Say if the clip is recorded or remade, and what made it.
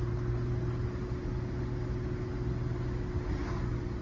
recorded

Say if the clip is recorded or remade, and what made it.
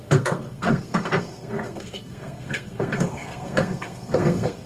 remade, codec, SNAC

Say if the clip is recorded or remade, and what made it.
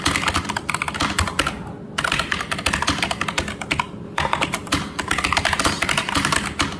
recorded